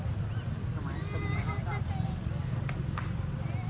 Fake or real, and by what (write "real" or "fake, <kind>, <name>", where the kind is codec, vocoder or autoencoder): real